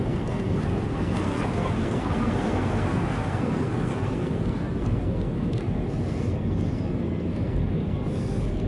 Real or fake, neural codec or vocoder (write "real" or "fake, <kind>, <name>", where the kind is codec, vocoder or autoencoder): fake, codec, SNAC